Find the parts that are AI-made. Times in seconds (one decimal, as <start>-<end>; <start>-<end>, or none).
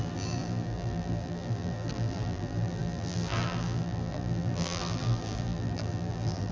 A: 0.0-6.5